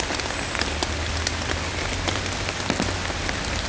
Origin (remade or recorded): recorded